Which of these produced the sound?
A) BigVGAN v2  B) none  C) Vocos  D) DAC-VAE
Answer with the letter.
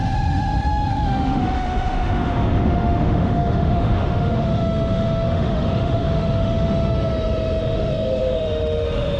D